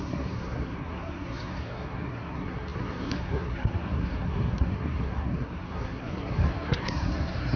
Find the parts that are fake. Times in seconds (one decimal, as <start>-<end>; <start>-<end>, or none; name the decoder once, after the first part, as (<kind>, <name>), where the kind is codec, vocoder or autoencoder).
0.0-7.6 (codec, SNAC)

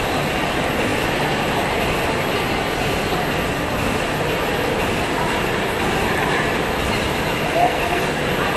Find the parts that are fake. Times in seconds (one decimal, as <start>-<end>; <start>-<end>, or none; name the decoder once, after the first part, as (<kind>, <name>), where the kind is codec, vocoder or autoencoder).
7.6-8.2 (codec, SNAC)

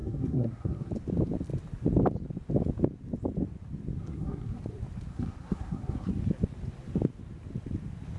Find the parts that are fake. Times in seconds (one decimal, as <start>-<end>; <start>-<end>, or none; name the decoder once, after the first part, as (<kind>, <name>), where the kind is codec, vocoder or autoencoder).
0.0-0.9 (codec, SNAC); 4.0-4.6; 5.1-6.1

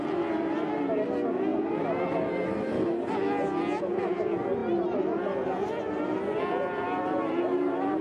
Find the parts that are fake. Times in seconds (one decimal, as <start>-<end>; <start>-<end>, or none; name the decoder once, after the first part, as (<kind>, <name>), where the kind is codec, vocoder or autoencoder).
none

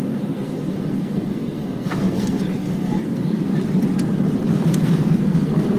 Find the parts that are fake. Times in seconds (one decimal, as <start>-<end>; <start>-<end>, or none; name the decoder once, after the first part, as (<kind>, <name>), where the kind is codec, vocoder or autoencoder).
0.0-3.5 (codec, SNAC); 4.6-5.8

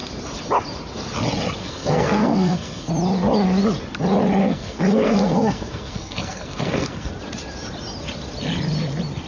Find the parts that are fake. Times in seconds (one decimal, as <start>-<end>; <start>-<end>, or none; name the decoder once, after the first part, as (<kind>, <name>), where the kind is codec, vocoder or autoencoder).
1.6-2.9 (codec, SNAC); 4.4-7.1

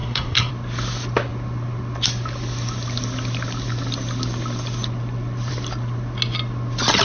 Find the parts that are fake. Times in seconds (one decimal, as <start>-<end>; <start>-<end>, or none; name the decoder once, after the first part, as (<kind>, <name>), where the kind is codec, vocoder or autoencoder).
0.0-0.5 (codec, SNAC)

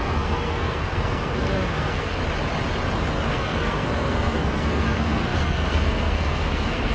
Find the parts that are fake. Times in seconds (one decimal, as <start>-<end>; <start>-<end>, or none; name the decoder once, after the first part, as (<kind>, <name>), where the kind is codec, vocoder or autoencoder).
0.0-2.2 (codec, SNAC); 3.3-6.9